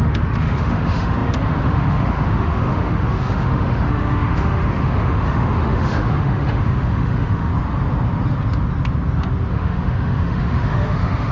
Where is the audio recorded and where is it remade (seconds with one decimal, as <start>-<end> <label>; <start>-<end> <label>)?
0.0-7.5 remade; 7.5-9.5 recorded; 9.5-11.3 remade